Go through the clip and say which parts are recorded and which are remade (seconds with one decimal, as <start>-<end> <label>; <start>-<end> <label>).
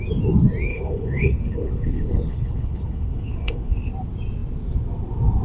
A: 0.0-0.7 recorded; 0.7-3.9 remade; 3.9-5.4 recorded